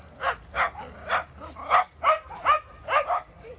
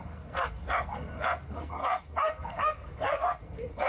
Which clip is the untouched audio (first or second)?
first